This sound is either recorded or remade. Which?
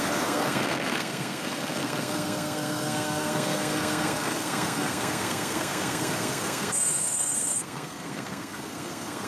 remade